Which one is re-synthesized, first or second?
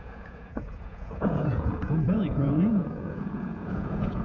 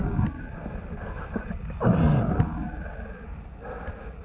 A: first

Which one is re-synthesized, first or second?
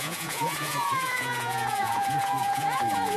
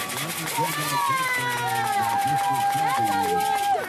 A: first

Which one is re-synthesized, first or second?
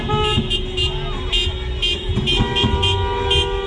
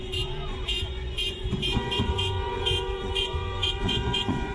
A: second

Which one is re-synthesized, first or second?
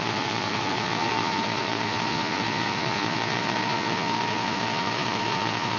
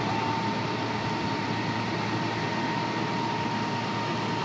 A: first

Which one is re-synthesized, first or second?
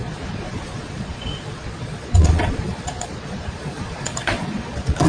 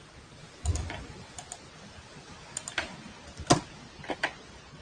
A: first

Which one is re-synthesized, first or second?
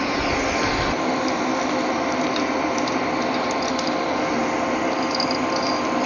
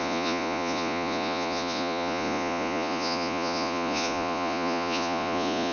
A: second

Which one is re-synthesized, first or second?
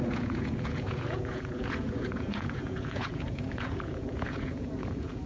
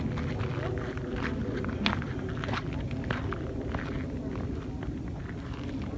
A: first